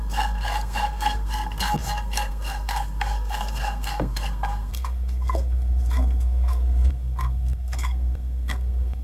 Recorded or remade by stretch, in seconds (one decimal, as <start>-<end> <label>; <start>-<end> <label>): 0.0-9.0 remade